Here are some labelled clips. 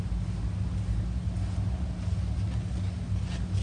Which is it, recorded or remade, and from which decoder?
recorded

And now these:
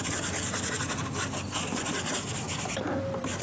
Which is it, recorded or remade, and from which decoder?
recorded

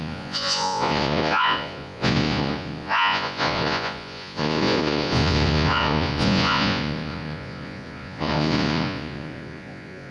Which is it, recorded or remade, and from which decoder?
remade, vocoder, Vocos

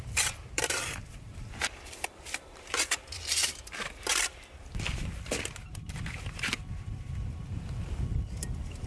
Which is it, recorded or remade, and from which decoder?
remade, vocoder, BigVGAN v2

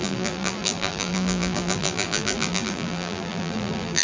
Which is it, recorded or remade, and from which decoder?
remade, vocoder, BigVGAN v2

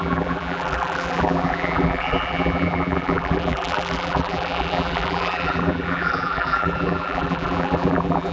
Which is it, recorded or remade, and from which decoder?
remade, vocoder, BigVGAN v2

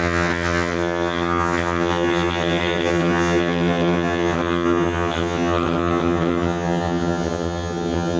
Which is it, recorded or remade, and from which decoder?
remade, vocoder, HiFi-GAN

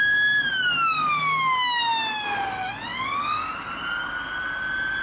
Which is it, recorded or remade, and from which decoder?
recorded